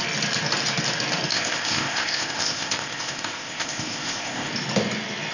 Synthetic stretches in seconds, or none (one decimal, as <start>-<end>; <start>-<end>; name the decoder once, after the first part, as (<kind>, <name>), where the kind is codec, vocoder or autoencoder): 1.3-4.5 (codec, ZipCodec)